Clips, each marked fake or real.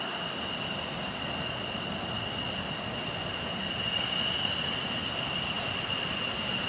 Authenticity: real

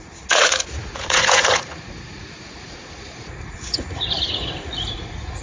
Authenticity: fake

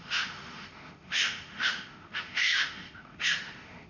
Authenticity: fake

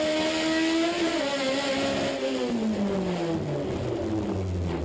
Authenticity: real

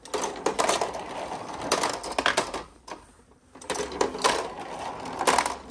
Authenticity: real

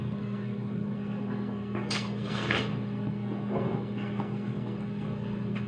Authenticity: fake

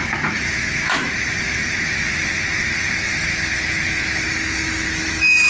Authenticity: fake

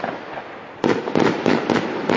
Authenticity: real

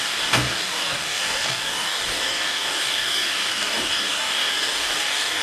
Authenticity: fake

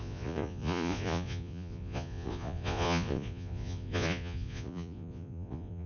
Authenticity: fake